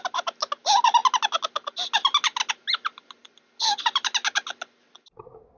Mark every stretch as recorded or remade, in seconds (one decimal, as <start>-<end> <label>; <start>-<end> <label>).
0.0-5.6 recorded